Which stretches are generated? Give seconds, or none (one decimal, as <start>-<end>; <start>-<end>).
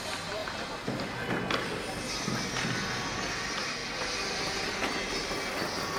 none